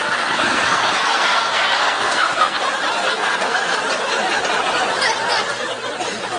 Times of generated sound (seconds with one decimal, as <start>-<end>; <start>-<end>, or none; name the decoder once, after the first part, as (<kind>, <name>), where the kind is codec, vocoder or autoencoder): 0.0-2.6 (codec, SNAC); 3.1-3.8

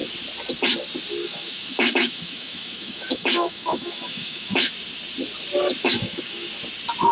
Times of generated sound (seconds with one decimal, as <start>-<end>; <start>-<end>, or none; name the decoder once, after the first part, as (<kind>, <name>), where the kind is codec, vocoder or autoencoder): 1.2-4.7 (autoencoder, DAC-VAE); 5.8-6.5

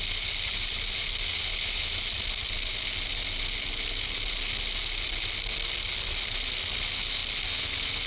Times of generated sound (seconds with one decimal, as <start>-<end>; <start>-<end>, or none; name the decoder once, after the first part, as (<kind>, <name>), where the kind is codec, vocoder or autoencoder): none

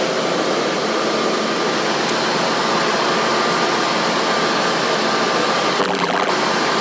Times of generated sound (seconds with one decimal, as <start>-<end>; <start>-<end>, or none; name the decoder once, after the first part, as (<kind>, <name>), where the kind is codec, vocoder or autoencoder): 5.8-6.3 (vocoder, BigVGAN v2)